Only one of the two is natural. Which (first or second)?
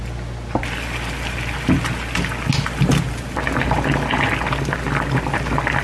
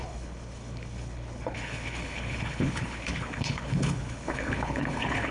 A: first